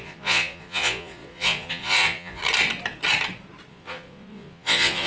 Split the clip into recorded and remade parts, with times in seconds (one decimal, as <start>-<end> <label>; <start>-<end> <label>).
0.0-2.4 remade; 2.4-3.7 recorded; 3.7-5.1 remade